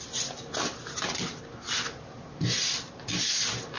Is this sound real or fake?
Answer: real